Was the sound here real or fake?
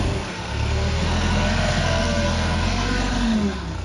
fake